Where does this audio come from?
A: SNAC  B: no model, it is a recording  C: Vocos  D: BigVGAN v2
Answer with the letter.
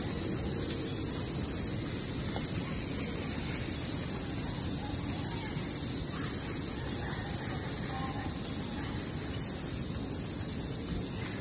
B